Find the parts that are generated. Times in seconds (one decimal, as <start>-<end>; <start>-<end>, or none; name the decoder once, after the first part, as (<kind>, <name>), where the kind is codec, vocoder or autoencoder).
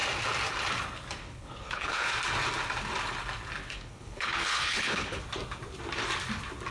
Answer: 1.2-2.1 (codec, HILCodec); 3.6-5.2